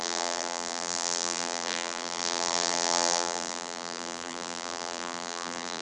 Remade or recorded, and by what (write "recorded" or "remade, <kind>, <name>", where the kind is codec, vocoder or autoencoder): remade, vocoder, BigVGAN v2